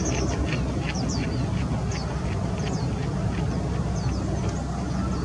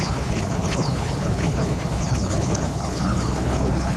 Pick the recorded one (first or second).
first